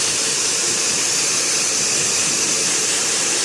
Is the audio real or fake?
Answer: fake